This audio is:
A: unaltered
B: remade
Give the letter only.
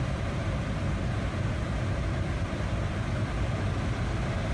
A